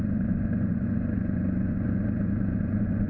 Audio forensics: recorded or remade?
remade